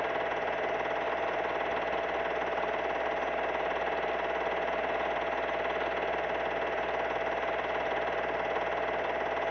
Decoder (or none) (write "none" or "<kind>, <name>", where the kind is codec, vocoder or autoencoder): none